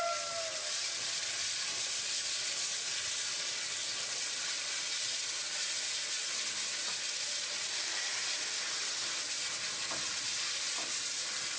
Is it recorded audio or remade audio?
recorded